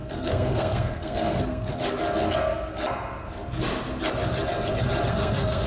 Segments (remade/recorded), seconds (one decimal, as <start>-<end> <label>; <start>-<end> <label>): 0.0-1.7 remade; 1.7-5.1 recorded; 5.1-5.7 remade